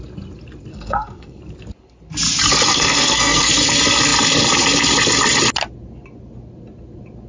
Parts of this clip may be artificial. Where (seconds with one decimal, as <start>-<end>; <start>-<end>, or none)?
0.7-1.4; 2.7-3.5